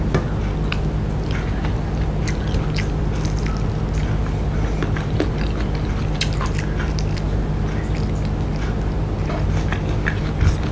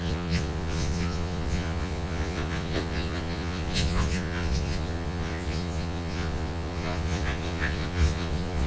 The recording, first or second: first